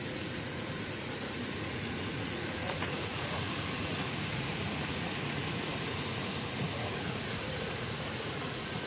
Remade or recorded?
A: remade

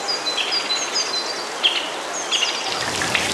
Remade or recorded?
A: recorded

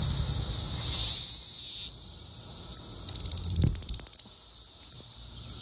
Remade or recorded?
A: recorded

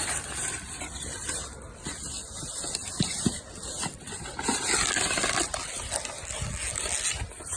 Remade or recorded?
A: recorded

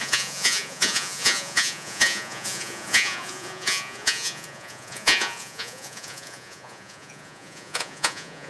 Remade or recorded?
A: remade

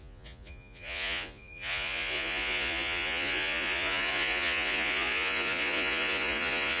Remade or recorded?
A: remade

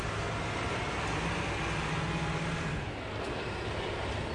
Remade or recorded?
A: recorded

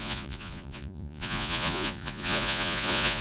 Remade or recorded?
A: remade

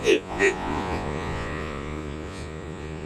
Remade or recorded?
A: remade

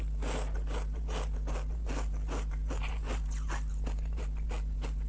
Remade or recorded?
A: recorded